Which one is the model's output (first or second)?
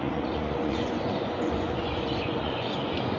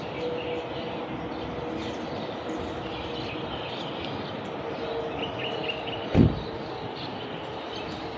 first